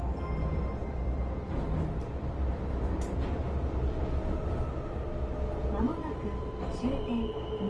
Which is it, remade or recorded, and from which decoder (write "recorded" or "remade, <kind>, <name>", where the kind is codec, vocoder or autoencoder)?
recorded